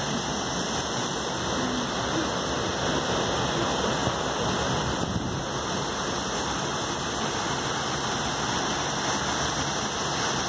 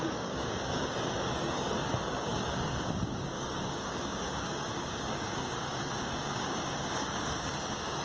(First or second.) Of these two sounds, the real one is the first